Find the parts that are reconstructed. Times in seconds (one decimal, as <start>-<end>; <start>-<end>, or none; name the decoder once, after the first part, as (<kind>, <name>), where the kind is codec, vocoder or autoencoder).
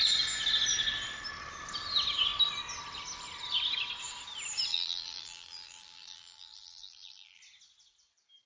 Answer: 4.7-7.4 (vocoder, BigVGAN v2)